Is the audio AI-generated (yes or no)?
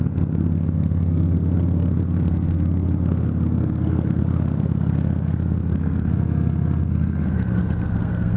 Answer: yes